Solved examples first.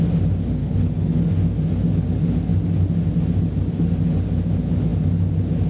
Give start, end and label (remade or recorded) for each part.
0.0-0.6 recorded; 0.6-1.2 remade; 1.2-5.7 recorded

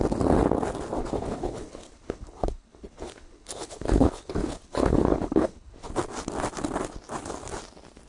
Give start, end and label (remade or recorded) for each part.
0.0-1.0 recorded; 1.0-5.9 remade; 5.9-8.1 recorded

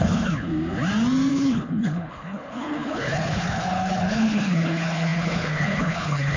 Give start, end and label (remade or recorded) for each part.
0.0-0.5 remade; 0.5-1.3 recorded; 1.3-6.4 remade